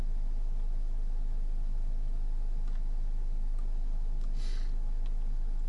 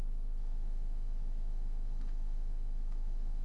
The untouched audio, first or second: first